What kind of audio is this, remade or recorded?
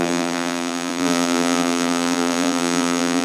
remade